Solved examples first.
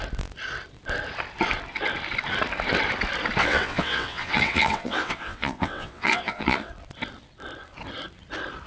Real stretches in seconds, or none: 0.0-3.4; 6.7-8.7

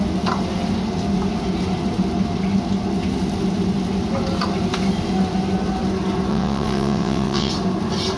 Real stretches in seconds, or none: 0.0-6.3; 7.5-8.2

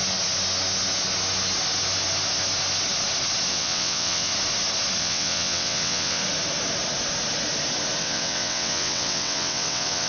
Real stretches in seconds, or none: 0.0-3.5; 4.3-5.0; 6.2-8.0

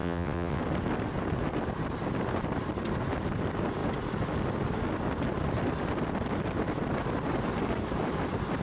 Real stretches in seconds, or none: 0.6-8.6

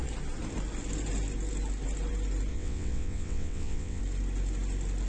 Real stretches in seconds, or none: 0.0-2.5; 4.0-5.1